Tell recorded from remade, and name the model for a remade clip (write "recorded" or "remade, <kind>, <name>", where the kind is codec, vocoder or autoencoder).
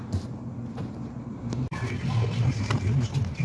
recorded